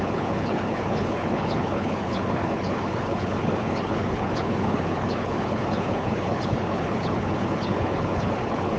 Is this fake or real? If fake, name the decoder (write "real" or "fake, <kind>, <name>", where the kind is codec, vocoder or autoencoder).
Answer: fake, codec, HILCodec